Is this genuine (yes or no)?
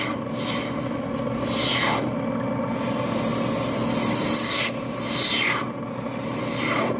yes